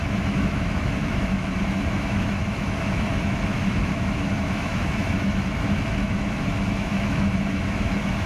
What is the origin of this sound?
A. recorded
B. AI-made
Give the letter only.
B